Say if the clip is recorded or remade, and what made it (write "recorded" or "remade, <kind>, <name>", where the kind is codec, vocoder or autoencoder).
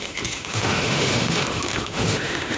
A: remade, autoencoder, DAC-VAE